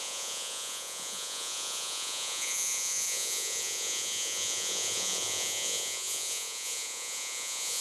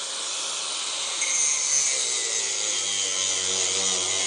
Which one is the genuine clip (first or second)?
second